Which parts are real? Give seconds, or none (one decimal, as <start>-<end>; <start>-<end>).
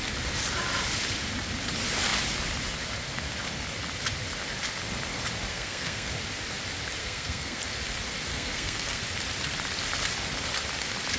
0.0-5.5; 6.1-7.0; 7.6-8.3; 9.0-11.2